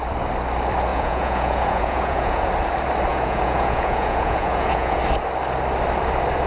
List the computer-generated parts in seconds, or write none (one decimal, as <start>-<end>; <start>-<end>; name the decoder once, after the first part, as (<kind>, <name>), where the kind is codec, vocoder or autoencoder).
0.9-2.5 (vocoder, Vocos); 3.1-5.0